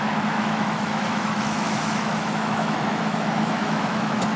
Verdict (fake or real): fake